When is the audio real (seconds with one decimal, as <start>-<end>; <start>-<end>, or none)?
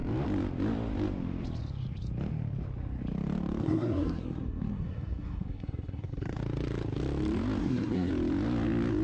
0.0-3.6; 6.4-7.6; 8.1-9.0